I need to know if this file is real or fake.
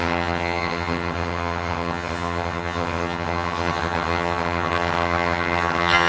fake